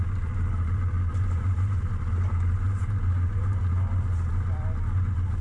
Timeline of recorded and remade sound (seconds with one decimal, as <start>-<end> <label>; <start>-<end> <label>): 0.0-1.1 recorded; 1.1-3.6 remade; 3.6-5.4 recorded